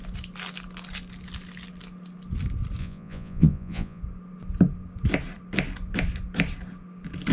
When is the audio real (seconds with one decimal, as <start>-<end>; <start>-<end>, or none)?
0.0-2.8; 4.0-7.3